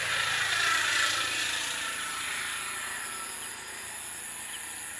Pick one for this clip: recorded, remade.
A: recorded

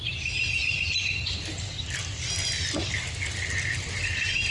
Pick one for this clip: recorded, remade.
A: recorded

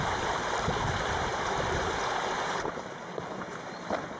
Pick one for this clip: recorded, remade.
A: remade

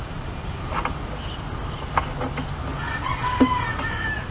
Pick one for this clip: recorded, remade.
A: recorded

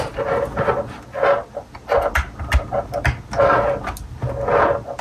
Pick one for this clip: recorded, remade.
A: recorded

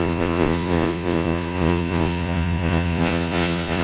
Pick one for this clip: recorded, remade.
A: remade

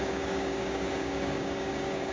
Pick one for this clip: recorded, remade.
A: remade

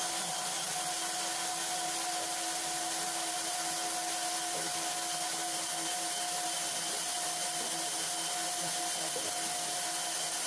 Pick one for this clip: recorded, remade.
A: recorded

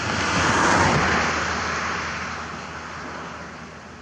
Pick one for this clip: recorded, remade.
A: recorded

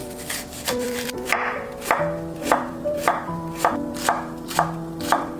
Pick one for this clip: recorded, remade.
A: remade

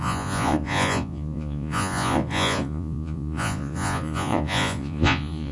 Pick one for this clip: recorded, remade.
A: remade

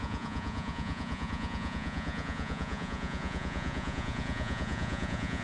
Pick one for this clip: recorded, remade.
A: remade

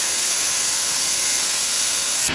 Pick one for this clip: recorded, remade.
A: remade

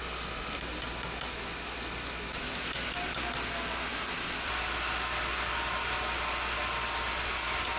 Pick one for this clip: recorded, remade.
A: recorded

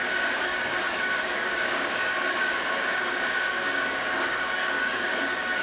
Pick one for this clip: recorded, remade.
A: remade